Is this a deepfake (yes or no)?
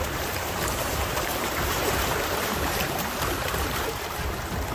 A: yes